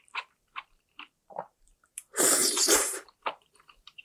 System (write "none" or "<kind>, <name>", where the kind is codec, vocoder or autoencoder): vocoder, BigVGAN v2